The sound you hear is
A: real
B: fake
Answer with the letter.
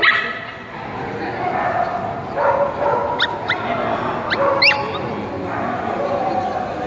A